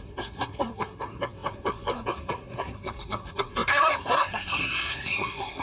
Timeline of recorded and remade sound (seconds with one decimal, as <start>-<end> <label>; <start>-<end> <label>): 0.0-5.6 remade